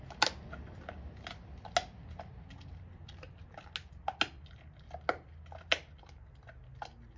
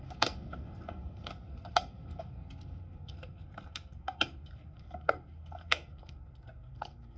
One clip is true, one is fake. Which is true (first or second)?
first